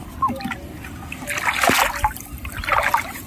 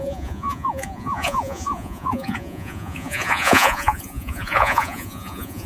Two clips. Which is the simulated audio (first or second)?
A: second